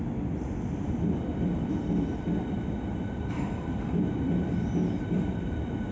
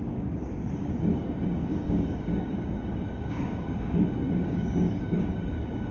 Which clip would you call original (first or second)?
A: first